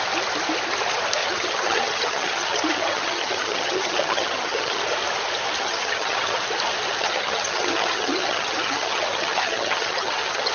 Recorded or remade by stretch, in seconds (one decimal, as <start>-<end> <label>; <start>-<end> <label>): 0.0-1.2 recorded; 1.2-4.8 remade; 4.8-5.6 recorded; 5.6-6.4 remade; 6.4-6.9 recorded; 6.9-10.5 remade